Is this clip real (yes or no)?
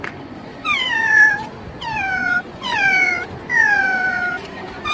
no